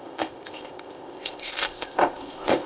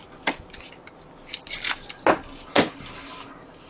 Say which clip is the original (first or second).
second